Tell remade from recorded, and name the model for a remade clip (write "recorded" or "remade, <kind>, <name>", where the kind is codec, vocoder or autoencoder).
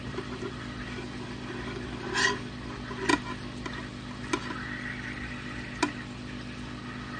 recorded